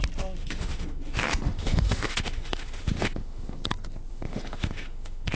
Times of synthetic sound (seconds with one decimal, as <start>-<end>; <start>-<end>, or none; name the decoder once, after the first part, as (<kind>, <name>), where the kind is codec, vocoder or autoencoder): 0.4-3.6 (autoencoder, DAC-VAE); 4.1-5.3

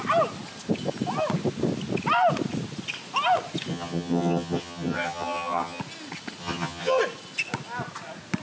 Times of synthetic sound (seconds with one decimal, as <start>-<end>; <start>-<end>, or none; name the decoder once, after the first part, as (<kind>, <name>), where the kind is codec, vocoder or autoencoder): 3.7-5.8 (vocoder, HiFi-GAN); 6.4-7.0

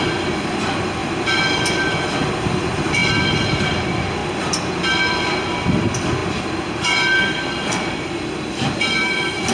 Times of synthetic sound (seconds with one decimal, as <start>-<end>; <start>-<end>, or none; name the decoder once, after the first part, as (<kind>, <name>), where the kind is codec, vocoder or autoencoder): 0.0-6.2 (vocoder, BigVGAN v2); 6.7-9.5